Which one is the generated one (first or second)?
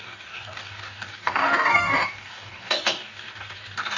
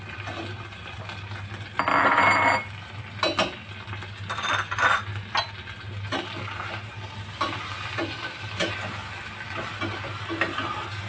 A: first